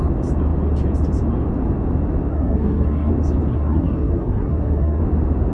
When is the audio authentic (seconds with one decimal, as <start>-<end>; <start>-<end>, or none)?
0.0-2.3; 3.1-3.5; 5.0-5.5